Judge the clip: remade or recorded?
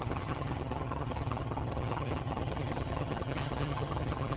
remade